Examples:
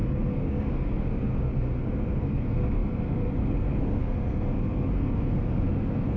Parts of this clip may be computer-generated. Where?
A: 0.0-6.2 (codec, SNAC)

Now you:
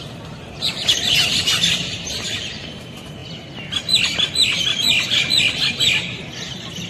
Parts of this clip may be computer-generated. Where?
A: none

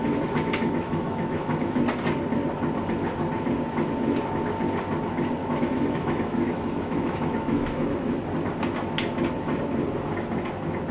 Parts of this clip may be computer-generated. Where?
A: 0.0-1.8 (autoencoder, DAC-VAE); 5.4-8.2

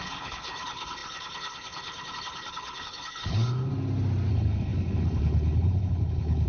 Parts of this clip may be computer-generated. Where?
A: 0.0-3.7 (codec, HILCodec); 4.3-6.5